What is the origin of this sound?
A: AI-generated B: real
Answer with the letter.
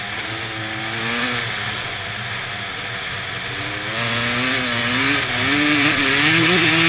B